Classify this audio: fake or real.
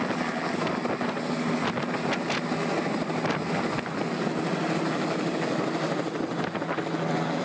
real